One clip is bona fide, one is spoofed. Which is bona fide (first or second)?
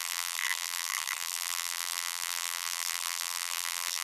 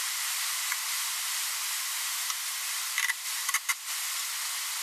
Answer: second